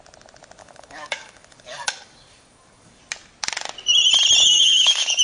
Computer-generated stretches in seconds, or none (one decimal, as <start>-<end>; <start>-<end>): 0.6-3.0; 4.5-5.2